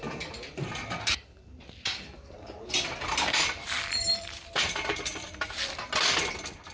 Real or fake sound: fake